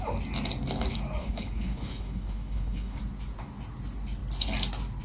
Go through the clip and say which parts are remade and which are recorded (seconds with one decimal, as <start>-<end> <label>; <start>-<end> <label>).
0.0-1.2 recorded; 1.2-3.0 remade; 3.0-5.0 recorded